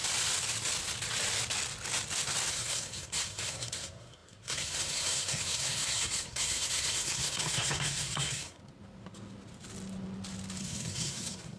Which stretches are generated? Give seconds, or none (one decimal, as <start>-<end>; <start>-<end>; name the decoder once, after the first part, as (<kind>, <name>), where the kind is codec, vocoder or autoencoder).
2.5-8.6 (codec, SNAC); 10.6-11.6